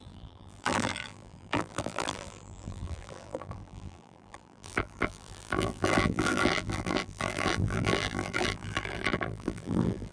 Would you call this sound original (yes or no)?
no